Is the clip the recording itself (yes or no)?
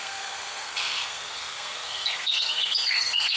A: no